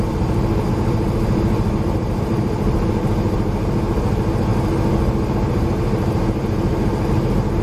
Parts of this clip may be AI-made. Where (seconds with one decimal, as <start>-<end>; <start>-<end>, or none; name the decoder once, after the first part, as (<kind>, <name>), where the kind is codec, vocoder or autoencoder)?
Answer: 0.0-4.5 (vocoder, BigVGAN v2); 5.3-7.6